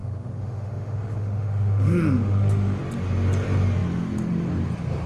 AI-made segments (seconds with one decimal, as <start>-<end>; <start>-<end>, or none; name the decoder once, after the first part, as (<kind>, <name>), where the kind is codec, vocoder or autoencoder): 0.0-2.8 (autoencoder, DAC-VAE)